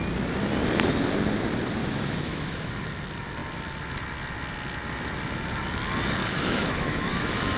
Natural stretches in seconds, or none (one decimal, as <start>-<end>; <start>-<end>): 0.0-1.8; 2.7-6.2

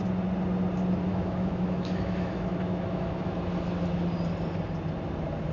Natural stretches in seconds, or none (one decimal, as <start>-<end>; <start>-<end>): 0.0-1.1; 3.4-5.5

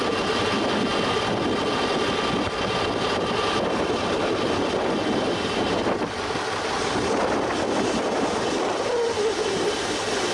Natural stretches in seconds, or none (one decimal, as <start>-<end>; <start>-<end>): 0.0-10.3

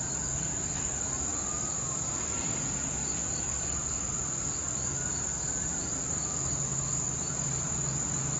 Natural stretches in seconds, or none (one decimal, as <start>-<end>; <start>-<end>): 0.0-8.4

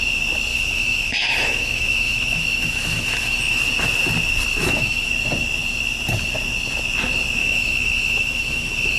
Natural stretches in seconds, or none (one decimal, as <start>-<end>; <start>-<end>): 0.0-0.5; 3.6-4.6; 5.1-7.4

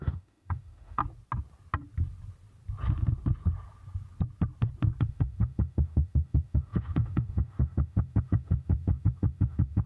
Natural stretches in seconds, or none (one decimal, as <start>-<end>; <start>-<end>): 1.0-5.0